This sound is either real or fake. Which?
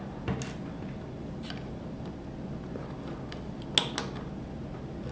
real